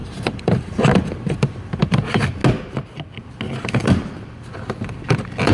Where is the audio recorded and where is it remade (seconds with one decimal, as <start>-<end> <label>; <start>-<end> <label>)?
0.0-2.4 remade; 2.4-3.7 recorded; 3.7-5.5 remade